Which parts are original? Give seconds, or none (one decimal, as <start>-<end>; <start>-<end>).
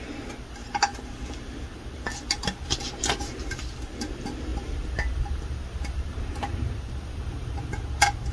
0.0-4.5; 7.8-8.3